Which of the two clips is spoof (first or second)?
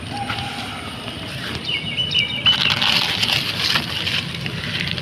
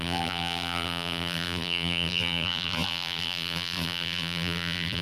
second